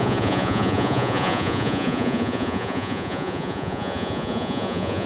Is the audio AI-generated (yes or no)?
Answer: yes